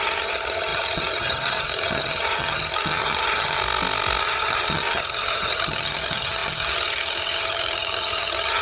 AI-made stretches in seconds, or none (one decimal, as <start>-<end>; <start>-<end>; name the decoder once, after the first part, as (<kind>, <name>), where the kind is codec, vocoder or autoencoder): 0.0-3.6 (vocoder, HiFi-GAN); 4.2-8.6